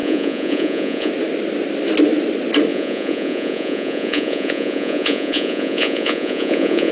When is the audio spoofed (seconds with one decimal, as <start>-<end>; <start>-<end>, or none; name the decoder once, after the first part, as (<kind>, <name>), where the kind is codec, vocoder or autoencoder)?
0.0-1.1 (vocoder, Vocos); 2.7-6.9